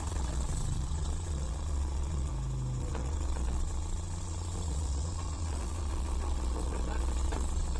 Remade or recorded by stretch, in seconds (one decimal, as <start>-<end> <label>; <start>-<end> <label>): 0.0-2.3 remade; 2.3-2.8 recorded; 2.8-7.8 remade